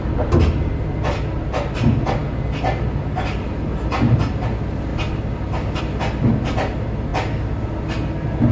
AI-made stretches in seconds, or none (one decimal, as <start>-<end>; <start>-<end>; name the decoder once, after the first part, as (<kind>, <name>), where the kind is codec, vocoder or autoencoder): none